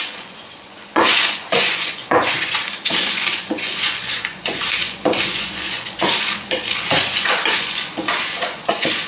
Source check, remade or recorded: remade